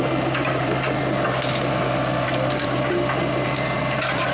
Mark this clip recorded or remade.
recorded